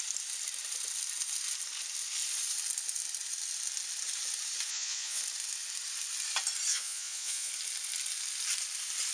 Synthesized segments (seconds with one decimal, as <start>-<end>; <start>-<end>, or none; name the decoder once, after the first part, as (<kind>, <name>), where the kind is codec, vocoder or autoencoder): 4.7-5.2 (vocoder, Vocos); 6.7-7.5